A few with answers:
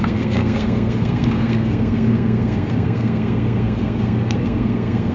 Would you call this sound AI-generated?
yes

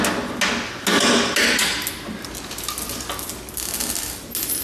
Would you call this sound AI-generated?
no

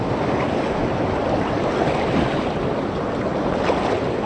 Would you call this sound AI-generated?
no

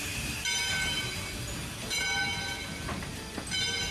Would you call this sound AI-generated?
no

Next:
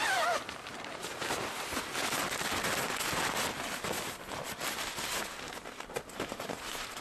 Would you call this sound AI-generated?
no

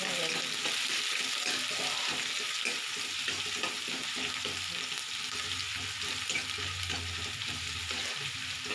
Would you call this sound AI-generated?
no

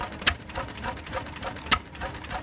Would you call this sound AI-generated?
yes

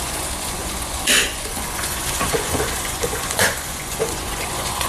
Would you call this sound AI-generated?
yes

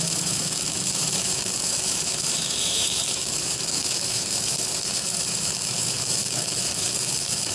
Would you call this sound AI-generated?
yes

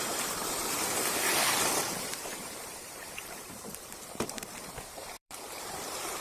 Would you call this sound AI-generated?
yes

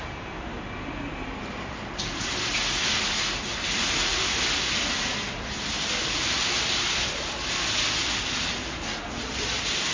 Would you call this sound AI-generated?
no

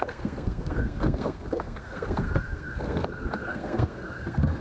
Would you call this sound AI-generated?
yes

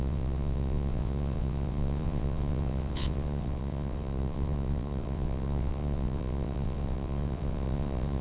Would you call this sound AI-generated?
yes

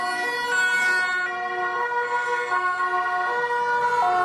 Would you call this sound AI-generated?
no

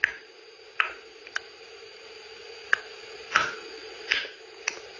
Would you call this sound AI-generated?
no